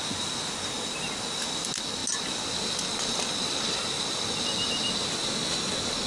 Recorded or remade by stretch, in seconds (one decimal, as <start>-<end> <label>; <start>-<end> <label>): 0.0-6.1 recorded